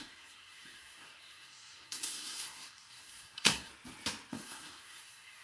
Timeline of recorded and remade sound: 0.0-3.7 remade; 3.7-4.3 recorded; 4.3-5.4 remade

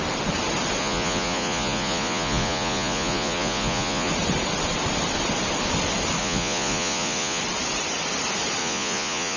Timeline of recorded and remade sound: 0.0-0.8 recorded; 0.8-4.1 remade; 4.1-6.2 recorded; 6.2-7.4 remade; 7.4-8.6 recorded; 8.6-9.4 remade

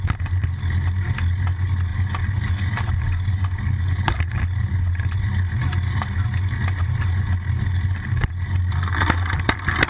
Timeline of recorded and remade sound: 0.0-9.9 recorded

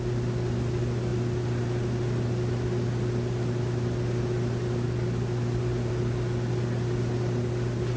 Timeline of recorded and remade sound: 0.0-8.0 recorded